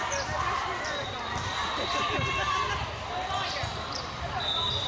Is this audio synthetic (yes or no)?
no